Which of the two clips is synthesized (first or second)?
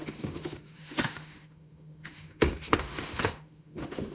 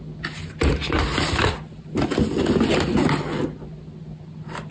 first